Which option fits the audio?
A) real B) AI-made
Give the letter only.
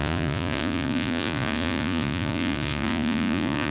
B